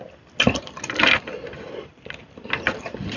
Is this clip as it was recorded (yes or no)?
yes